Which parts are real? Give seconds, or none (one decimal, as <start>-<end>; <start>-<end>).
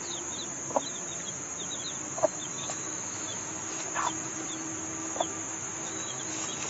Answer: 0.0-2.6; 3.8-5.0; 6.2-6.7